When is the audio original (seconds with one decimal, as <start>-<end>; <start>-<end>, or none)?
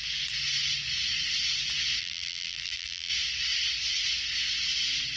0.0-2.0; 3.1-5.2